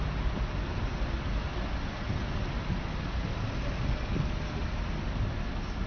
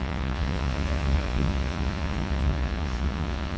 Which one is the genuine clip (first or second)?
first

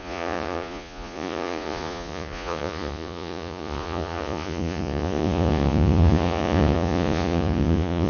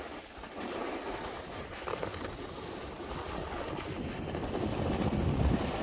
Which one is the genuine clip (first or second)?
second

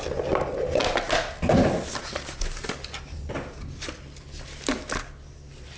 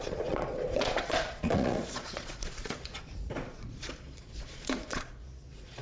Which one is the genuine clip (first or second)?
first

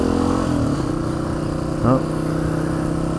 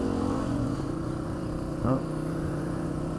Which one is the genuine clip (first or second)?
first